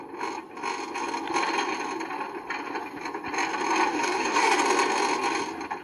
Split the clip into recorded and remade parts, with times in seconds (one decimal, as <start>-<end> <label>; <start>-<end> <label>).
0.0-3.9 recorded; 3.9-4.6 remade; 4.6-5.8 recorded